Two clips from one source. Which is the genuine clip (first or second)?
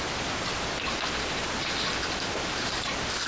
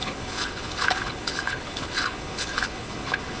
first